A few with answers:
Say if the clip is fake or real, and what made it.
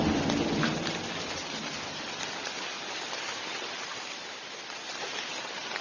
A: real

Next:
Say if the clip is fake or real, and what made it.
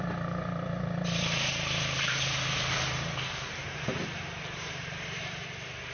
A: fake, vocoder, BigVGAN v2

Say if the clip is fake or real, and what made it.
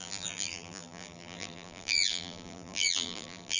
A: fake, vocoder, BigVGAN v2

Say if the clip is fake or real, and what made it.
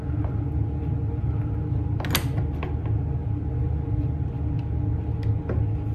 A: real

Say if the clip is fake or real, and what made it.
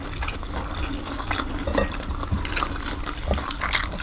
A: real